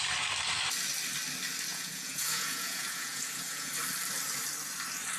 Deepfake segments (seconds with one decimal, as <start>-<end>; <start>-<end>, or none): 1.7-3.7